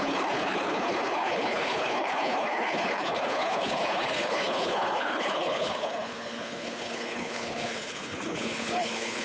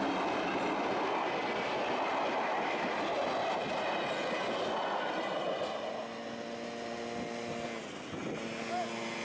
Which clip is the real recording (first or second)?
second